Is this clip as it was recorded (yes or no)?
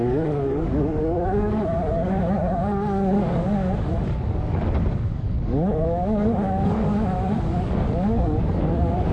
no